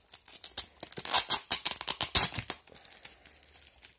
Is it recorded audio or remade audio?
recorded